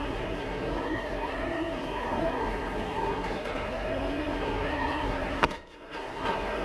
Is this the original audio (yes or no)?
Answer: no